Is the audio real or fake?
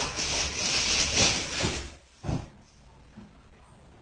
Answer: real